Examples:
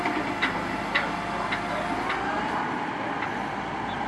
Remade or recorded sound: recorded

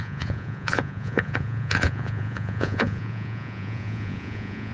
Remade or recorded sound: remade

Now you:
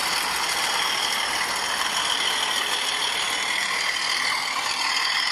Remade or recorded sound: recorded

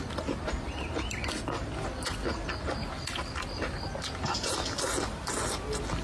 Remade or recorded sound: recorded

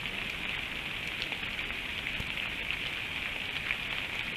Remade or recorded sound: recorded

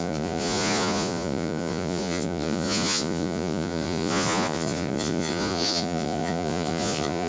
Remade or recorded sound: remade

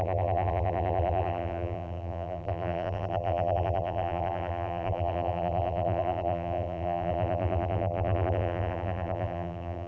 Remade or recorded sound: remade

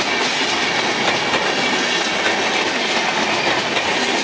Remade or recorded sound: recorded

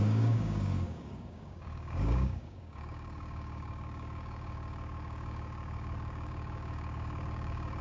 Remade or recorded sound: remade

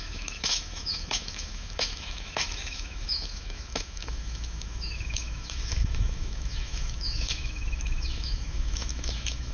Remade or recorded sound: remade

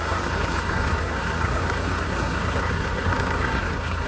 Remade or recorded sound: remade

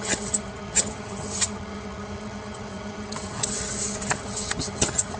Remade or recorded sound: remade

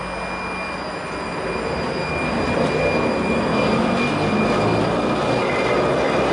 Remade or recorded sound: recorded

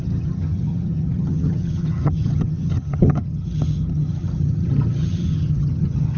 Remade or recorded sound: remade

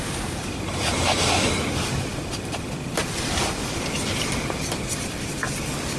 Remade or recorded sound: remade